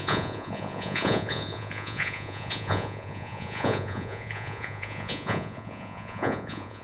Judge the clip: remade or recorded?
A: remade